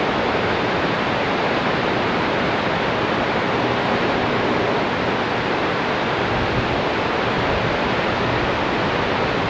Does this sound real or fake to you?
real